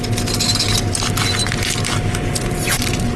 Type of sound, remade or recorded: recorded